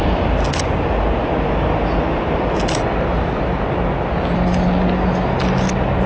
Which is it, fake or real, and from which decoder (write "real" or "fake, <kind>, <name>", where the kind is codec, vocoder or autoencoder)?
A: real